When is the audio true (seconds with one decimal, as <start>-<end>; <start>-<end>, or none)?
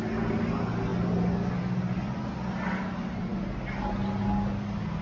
0.0-5.0